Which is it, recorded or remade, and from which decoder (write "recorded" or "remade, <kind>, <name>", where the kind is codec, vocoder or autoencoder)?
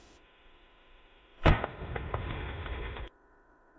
remade, autoencoder, DAC-VAE